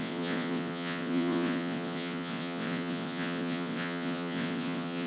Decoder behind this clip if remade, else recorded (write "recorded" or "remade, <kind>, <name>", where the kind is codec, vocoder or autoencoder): remade, vocoder, WaveNeXt